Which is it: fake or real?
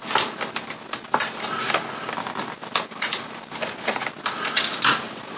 real